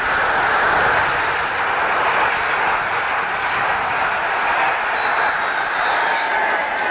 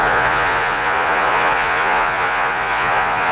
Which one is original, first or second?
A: first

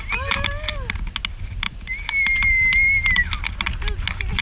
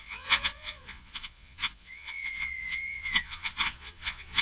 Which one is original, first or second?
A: first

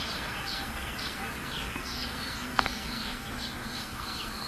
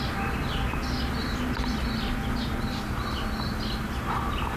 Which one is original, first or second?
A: second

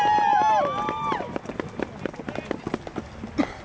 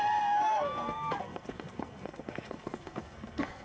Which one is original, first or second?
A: first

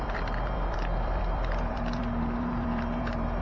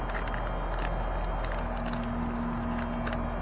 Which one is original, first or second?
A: second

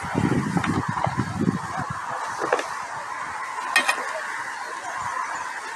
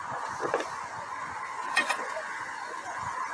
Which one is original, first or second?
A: first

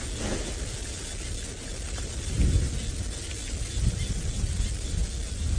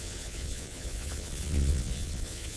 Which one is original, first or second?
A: first